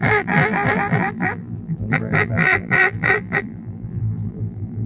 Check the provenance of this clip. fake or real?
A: fake